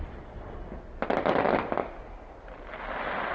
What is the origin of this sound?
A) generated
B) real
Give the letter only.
B